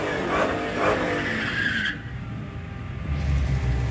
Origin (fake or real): real